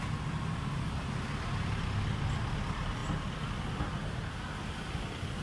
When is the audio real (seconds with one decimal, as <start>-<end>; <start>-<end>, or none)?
0.0-5.4